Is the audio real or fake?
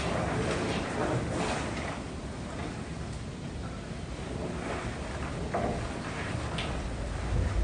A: real